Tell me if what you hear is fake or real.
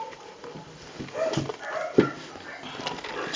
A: real